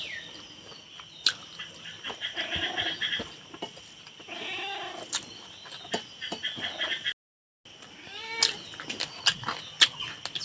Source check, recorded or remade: recorded